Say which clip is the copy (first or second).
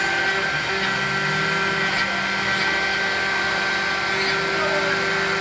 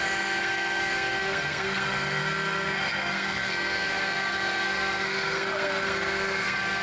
second